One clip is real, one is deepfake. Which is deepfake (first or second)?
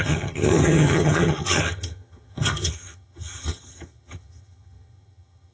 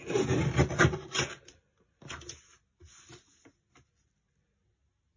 first